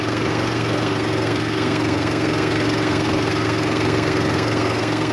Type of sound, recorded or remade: remade